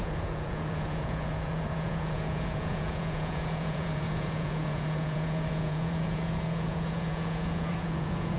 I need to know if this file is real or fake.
fake